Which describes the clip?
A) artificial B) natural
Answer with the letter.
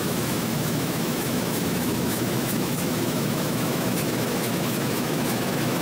A